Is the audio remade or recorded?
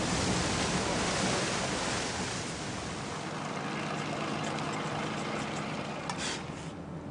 recorded